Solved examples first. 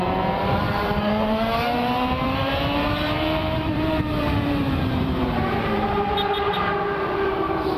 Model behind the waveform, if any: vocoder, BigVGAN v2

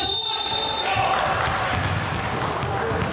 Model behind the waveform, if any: none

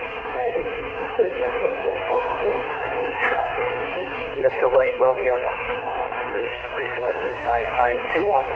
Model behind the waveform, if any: codec, SNAC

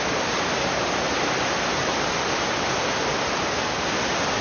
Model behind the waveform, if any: none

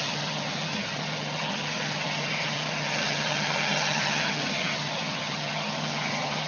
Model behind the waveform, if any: vocoder, HiFi-GAN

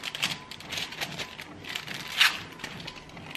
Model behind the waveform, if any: none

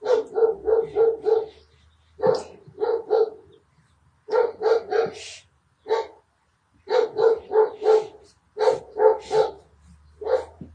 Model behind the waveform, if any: none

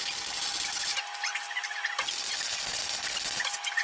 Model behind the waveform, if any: none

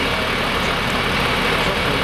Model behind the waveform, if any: none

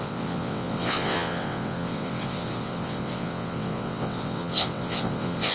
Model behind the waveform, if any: vocoder, WaveNeXt